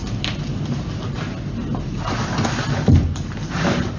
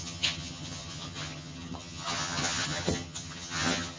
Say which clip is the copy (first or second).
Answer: second